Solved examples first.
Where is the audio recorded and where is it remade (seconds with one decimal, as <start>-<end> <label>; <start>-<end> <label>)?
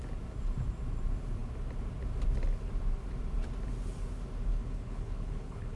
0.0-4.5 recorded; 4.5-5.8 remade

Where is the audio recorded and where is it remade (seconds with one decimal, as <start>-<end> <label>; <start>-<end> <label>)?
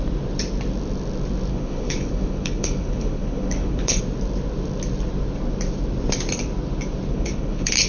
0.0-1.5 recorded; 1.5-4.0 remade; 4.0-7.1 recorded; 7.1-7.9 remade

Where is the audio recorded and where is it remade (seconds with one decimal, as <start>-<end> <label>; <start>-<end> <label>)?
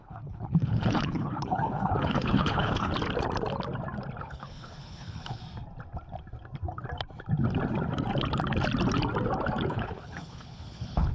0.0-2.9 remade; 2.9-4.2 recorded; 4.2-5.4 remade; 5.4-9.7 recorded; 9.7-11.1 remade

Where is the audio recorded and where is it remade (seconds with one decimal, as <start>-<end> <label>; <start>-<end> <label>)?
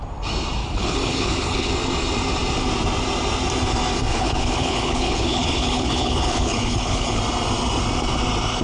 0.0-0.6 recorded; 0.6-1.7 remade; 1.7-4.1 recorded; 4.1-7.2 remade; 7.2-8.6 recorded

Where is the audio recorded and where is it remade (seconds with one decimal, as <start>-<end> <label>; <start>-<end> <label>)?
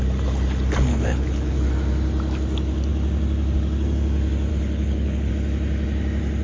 0.0-0.9 recorded; 0.9-1.7 remade; 1.7-4.5 recorded; 4.5-5.3 remade; 5.3-6.4 recorded